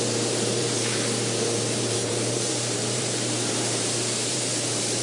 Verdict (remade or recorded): remade